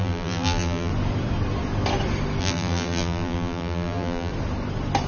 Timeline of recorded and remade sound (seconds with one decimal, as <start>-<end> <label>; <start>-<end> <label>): 0.0-0.9 remade; 0.9-2.4 recorded; 2.4-4.3 remade; 4.3-5.1 recorded